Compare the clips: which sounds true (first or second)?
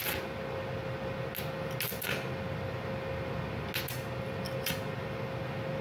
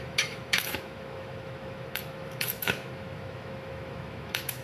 first